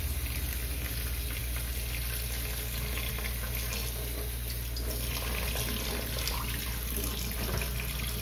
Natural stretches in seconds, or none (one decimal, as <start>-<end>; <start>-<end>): 0.0-8.2